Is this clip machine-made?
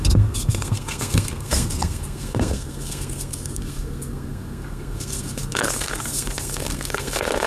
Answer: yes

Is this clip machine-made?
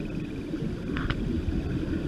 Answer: no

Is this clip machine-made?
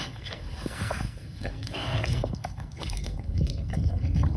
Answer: yes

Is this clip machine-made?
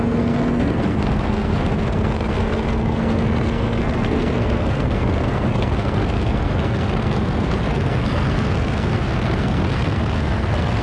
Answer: yes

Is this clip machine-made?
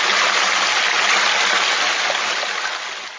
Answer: no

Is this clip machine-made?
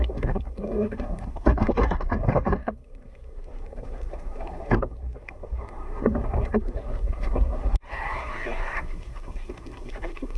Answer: yes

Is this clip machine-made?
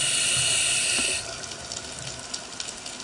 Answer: no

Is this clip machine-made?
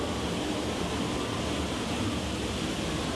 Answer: no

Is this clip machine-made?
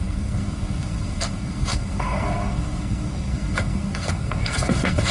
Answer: yes